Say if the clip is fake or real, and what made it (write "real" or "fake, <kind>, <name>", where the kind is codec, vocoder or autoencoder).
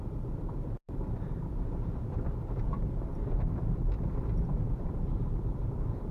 fake, vocoder, BigVGAN v2